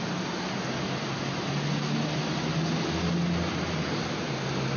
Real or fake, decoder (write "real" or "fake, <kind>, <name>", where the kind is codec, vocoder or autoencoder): real